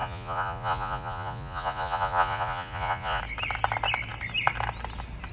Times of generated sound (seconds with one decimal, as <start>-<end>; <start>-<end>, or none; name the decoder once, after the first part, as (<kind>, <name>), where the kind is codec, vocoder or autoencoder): 0.0-3.2 (vocoder, Vocos)